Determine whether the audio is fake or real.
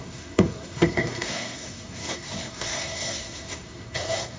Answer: fake